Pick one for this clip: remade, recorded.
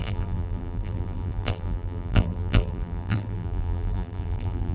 remade